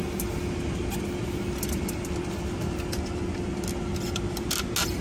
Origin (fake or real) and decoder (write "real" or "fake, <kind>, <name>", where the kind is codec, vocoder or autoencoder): real